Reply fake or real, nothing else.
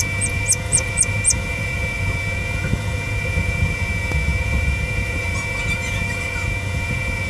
fake